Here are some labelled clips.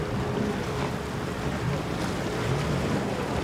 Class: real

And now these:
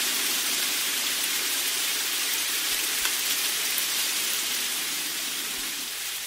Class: fake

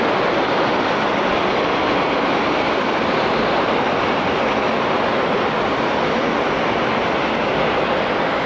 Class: fake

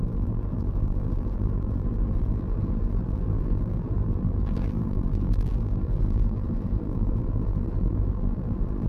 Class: fake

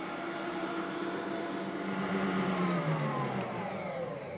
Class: fake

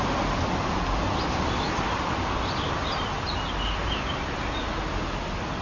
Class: real